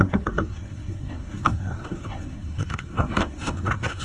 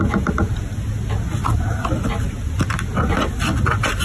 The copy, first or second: first